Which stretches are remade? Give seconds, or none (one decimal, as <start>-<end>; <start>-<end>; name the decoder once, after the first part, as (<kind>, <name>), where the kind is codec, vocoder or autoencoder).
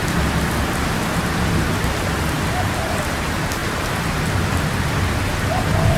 none